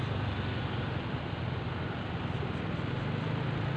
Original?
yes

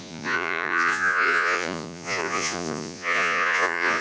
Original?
no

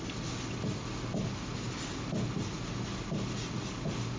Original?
yes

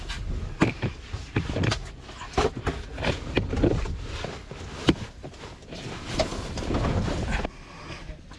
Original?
yes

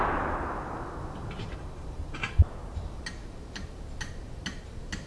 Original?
yes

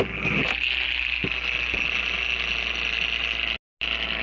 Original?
yes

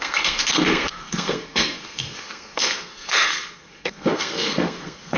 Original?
no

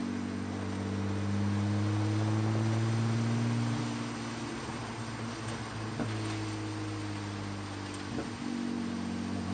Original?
yes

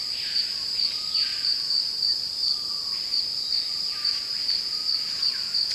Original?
no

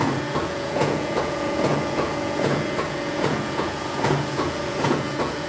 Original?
no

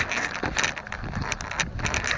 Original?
yes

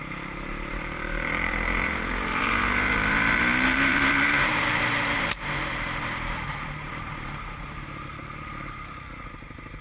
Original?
no